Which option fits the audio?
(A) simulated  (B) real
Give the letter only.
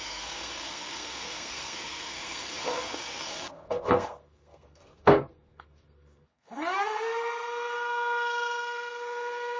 A